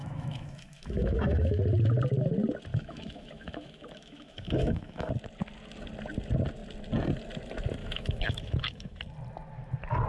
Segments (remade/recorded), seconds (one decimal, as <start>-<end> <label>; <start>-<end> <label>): 0.0-1.6 remade; 1.6-2.7 recorded; 2.7-5.1 remade; 5.1-7.8 recorded; 7.8-9.0 remade; 9.0-10.1 recorded